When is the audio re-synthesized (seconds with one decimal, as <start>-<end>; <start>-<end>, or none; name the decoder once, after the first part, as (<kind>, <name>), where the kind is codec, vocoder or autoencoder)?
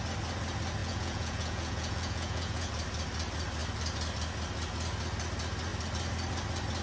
0.8-2.7 (vocoder, Vocos)